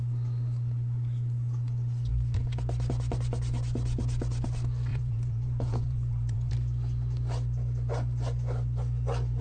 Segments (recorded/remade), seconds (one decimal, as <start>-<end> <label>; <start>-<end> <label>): 0.0-4.9 recorded; 4.9-6.5 remade; 6.5-9.4 recorded